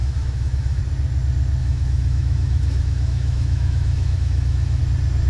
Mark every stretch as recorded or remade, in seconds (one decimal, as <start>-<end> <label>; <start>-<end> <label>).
0.0-0.8 remade; 0.8-1.6 recorded; 1.6-4.8 remade; 4.8-5.3 recorded

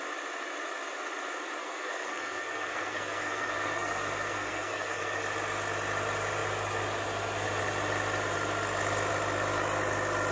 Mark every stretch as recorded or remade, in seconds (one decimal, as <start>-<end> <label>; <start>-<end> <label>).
0.0-1.6 recorded; 1.6-5.2 remade; 5.2-10.3 recorded

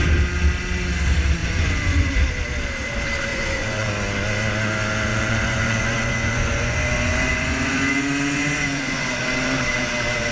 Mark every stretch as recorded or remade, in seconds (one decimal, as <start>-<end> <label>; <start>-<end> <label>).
0.0-1.4 recorded; 1.4-2.1 remade; 2.1-3.3 recorded; 3.3-3.9 remade; 3.9-5.1 recorded; 5.1-9.2 remade; 9.2-10.3 recorded

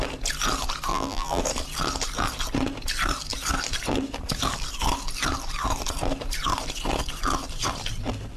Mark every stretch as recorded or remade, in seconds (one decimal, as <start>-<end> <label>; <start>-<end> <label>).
0.0-0.9 recorded; 0.9-1.4 remade; 1.4-8.4 recorded

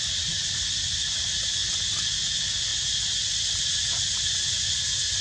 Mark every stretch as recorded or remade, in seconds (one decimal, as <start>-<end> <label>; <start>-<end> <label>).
0.0-5.2 recorded

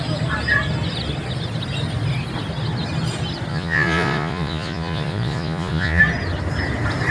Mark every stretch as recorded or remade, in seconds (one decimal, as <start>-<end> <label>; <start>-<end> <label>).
0.0-3.5 recorded; 3.5-6.0 remade; 6.0-7.1 recorded